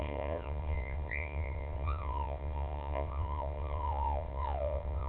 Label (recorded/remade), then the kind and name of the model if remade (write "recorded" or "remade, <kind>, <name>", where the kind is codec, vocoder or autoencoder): remade, vocoder, WaveNeXt